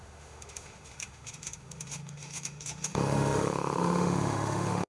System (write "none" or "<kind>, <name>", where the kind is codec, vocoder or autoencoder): autoencoder, DAC-VAE